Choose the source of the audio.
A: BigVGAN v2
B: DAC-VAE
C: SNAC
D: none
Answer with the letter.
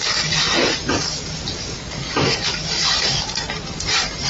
D